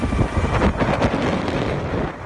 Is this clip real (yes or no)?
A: yes